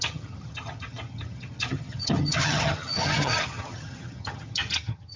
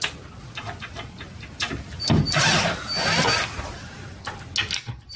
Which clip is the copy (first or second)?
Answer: first